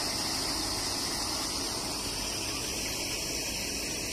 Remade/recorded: recorded